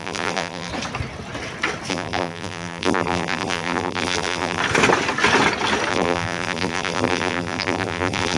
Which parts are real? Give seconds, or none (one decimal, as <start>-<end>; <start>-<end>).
0.7-1.9; 4.6-5.9